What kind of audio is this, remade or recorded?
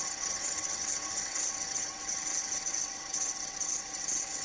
remade